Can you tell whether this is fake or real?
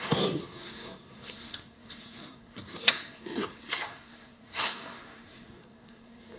fake